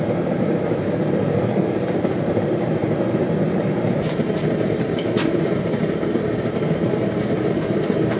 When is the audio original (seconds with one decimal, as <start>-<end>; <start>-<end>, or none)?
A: none